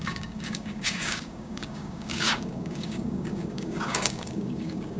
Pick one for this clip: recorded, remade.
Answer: remade